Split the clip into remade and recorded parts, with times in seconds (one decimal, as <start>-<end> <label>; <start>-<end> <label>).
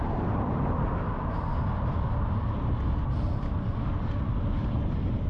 0.0-1.5 remade; 1.5-4.7 recorded; 4.7-5.3 remade